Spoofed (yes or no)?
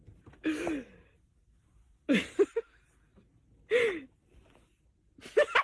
no